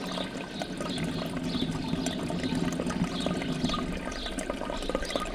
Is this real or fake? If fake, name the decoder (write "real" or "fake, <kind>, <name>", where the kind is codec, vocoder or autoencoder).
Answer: real